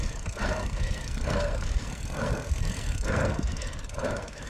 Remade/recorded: remade